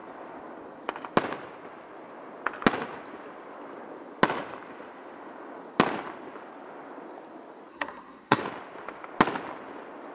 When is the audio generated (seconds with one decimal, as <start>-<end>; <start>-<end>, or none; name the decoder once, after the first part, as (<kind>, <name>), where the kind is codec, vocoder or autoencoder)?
7.7-8.4 (codec, SNAC)